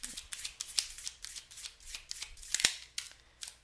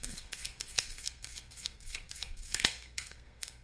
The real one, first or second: first